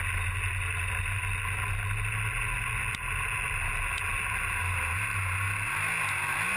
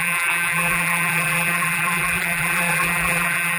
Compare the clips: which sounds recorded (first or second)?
first